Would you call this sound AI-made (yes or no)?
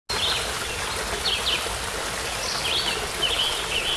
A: no